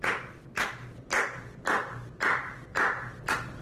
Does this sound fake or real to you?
real